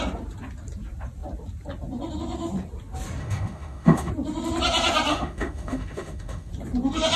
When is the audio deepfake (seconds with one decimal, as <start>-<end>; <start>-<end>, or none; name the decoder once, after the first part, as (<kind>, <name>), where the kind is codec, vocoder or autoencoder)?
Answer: 3.2-4.1 (autoencoder, DAC-VAE); 5.1-6.5